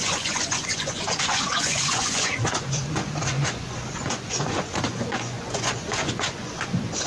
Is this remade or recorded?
remade